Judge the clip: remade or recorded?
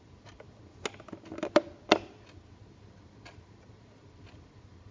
recorded